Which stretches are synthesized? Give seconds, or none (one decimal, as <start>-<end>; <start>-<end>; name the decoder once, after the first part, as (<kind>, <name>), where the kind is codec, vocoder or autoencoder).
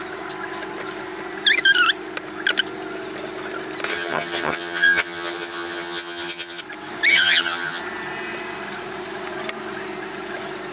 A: 3.9-6.6 (vocoder, HiFi-GAN); 7.1-7.8